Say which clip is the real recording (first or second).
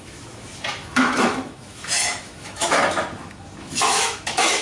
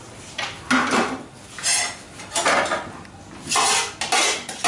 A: second